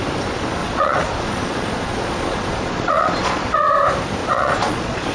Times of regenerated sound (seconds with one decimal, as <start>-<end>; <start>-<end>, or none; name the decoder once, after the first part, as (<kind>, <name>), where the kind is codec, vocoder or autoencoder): 0.6-3.7 (vocoder, Vocos); 4.2-5.1